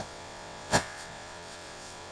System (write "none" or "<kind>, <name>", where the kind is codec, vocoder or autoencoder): vocoder, WaveNeXt